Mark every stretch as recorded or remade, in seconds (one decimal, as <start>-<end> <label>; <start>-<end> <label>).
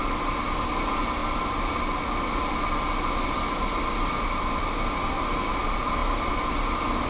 0.0-7.1 recorded